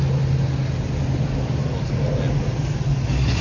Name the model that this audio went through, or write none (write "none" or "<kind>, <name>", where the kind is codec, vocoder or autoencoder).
none